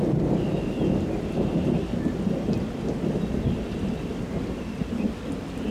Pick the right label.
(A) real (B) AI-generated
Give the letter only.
A